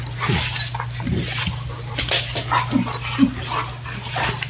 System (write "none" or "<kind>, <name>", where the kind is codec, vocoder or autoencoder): none